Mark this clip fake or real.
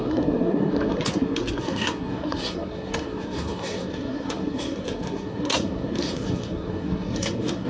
fake